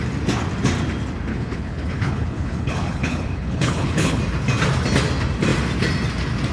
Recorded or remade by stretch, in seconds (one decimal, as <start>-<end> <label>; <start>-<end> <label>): 0.0-1.3 recorded; 1.3-4.2 remade; 4.2-6.5 recorded